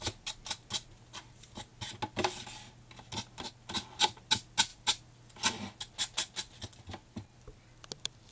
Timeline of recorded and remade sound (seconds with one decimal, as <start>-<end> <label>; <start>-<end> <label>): 0.0-8.3 recorded